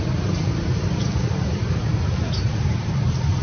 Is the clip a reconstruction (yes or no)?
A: yes